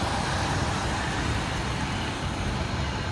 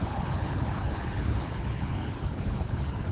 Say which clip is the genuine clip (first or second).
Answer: first